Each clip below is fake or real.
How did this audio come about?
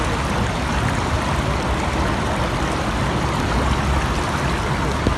real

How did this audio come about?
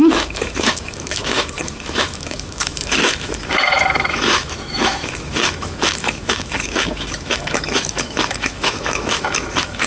fake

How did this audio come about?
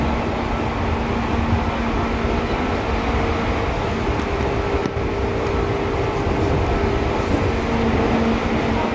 real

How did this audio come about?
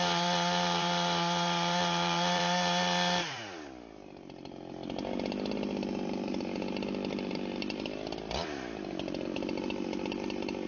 fake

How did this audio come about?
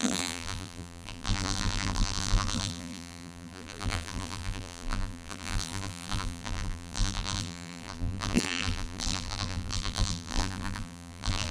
fake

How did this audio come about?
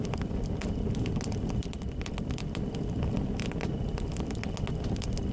real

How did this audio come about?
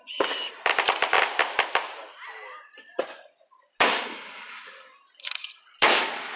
real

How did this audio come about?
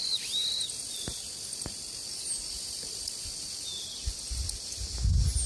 real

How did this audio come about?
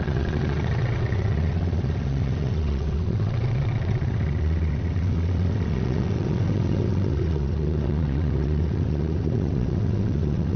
fake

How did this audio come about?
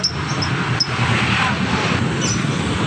real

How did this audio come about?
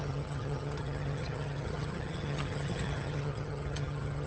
fake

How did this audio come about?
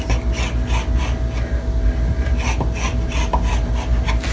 real